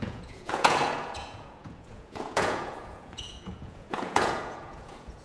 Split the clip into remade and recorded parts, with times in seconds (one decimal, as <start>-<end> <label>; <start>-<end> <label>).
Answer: 0.0-5.2 remade